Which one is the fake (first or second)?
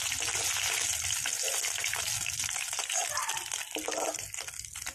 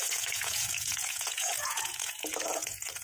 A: second